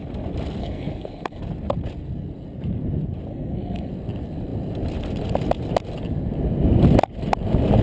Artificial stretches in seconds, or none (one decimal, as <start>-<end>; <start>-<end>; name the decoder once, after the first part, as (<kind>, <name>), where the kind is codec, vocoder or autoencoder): 0.6-1.4 (codec, SNAC); 3.3-3.9